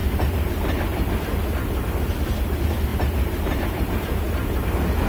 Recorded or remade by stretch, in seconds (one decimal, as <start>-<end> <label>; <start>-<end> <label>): 0.0-0.5 remade; 0.5-2.9 recorded; 2.9-4.1 remade; 4.1-5.1 recorded

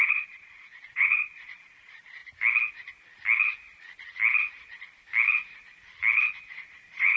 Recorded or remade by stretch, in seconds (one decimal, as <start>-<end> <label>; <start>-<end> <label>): 0.0-2.2 remade; 2.2-6.5 recorded; 6.5-7.2 remade

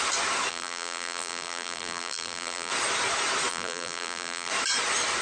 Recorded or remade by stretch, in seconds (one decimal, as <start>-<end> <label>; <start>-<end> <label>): 0.0-0.5 recorded; 0.5-2.7 remade; 2.7-3.5 recorded; 3.5-4.5 remade; 4.5-5.2 recorded

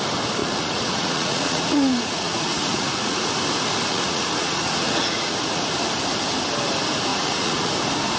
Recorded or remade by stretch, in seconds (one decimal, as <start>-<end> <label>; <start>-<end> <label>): 0.0-0.4 recorded; 0.4-3.3 remade; 3.3-3.9 recorded; 3.9-5.6 remade; 5.6-7.1 recorded; 7.1-7.7 remade; 7.7-8.2 recorded

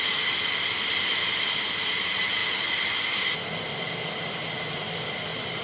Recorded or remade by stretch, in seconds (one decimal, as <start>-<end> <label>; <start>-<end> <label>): 0.0-2.4 remade; 2.4-3.6 recorded; 3.6-5.6 remade